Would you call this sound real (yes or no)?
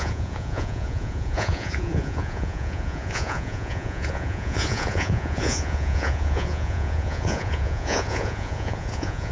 no